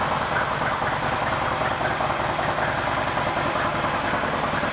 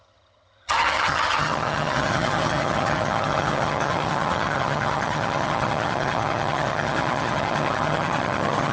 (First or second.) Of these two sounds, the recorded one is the first